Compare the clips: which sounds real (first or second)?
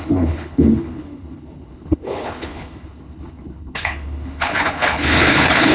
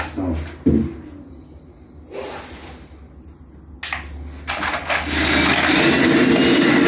second